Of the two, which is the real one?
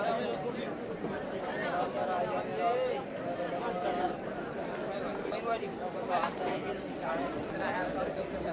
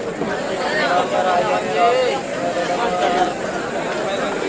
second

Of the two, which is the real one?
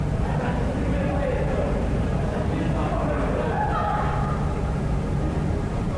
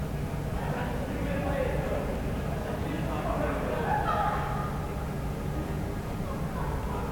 second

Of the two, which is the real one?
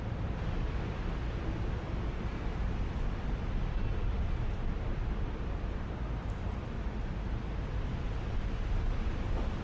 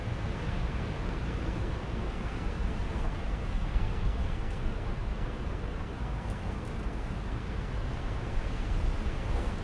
first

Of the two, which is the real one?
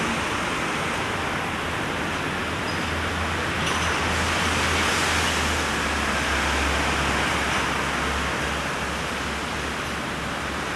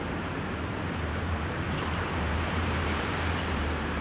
first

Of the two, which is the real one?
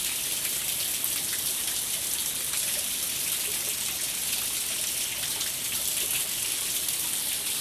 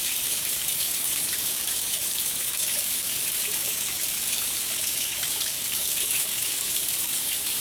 first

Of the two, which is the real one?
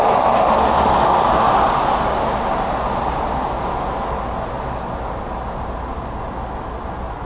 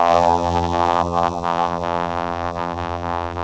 first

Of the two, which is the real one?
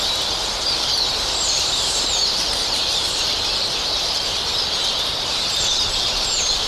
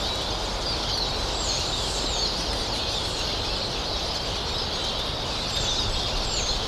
second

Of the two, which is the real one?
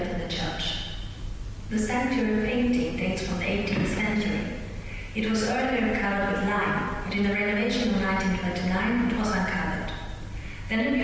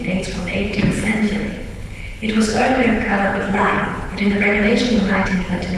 first